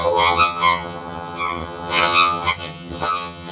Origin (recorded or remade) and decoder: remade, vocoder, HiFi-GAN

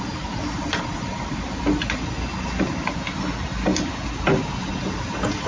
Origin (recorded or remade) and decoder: recorded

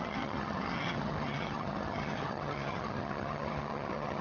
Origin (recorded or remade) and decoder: remade, vocoder, HiFi-GAN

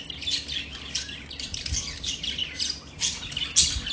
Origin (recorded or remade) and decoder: recorded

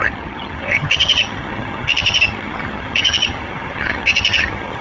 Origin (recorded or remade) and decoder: remade, vocoder, HiFi-GAN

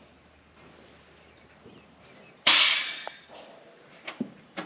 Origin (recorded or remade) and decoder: recorded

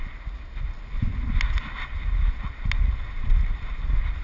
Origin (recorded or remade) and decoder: recorded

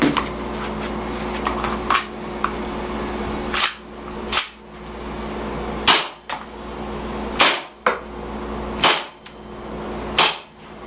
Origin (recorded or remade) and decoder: recorded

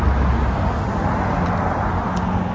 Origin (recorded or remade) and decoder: recorded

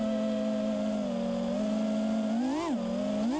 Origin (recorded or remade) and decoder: recorded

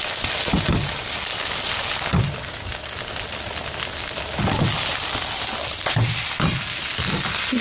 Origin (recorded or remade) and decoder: recorded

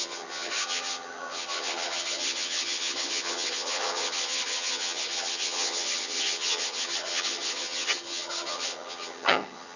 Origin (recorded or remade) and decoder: remade, vocoder, HiFi-GAN